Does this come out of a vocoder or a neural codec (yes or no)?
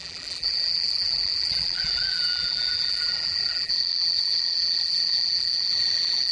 yes